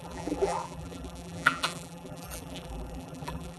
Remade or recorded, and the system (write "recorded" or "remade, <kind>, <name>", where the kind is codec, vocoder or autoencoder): remade, vocoder, BigVGAN v2